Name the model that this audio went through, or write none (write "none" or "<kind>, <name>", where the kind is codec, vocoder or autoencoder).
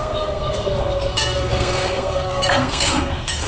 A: codec, SNAC